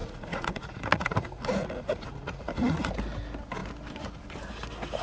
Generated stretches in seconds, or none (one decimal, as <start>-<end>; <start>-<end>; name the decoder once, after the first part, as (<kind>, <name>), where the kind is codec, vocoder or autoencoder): 0.0-2.9 (vocoder, Vocos)